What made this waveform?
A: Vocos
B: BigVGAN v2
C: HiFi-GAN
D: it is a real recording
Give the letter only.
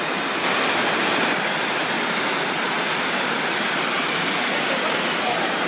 D